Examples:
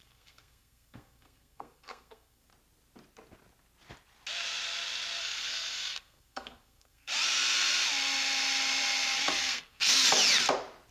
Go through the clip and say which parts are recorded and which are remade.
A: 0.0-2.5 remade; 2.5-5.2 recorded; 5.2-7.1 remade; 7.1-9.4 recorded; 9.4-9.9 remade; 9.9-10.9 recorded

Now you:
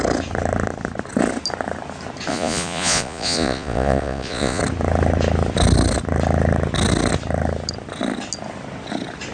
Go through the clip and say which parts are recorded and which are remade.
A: 0.0-2.3 recorded; 2.3-4.6 remade; 4.6-9.3 recorded

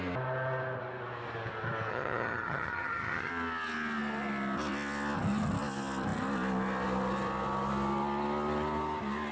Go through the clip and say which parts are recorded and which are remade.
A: 0.0-1.9 recorded; 1.9-3.3 remade; 3.3-9.3 recorded

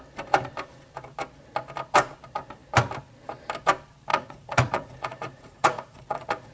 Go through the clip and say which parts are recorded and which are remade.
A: 0.0-4.1 recorded; 4.1-6.5 remade

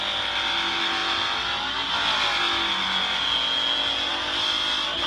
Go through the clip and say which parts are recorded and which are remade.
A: 0.0-5.1 recorded

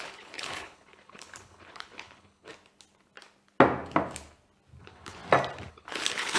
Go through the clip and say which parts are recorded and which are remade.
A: 0.0-2.5 remade; 2.5-4.8 recorded; 4.8-5.2 remade; 5.2-5.7 recorded; 5.7-6.4 remade

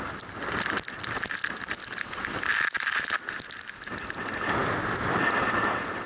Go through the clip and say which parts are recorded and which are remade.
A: 0.0-6.1 recorded